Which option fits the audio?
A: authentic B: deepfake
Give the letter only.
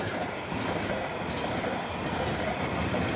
A